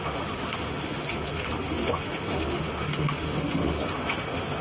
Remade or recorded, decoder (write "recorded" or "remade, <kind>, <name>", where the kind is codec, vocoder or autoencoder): remade, autoencoder, DAC-VAE